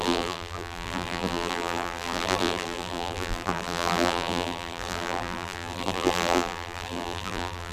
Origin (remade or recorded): remade